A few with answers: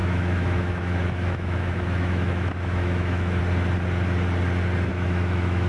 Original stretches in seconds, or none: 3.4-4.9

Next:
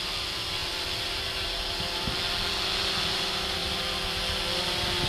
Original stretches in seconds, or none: 0.0-5.1

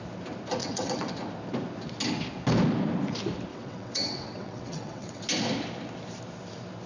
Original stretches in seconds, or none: 0.0-0.6; 1.1-3.5; 5.2-6.9

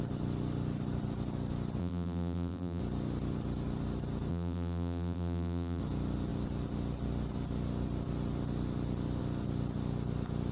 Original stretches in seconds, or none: 0.0-1.8; 2.8-4.3; 5.8-10.5